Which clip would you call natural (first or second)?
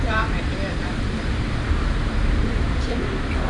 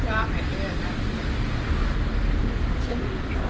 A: second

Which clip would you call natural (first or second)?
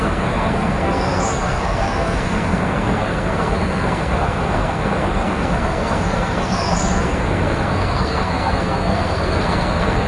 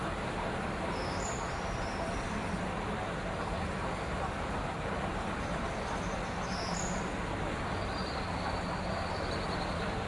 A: second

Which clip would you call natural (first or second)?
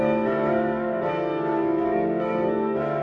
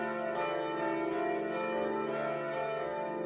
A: second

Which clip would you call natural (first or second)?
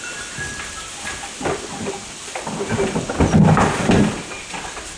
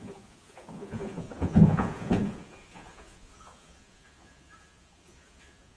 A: first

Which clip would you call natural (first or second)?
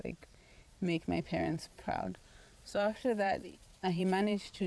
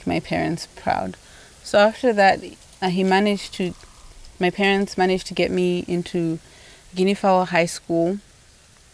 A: second